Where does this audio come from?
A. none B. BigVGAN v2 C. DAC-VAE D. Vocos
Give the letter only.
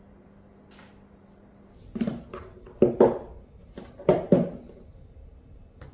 A